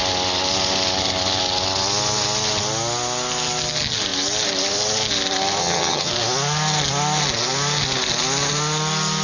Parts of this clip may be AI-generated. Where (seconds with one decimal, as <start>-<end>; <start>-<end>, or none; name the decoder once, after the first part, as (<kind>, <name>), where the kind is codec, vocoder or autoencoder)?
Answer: 5.6-6.1 (vocoder, HiFi-GAN)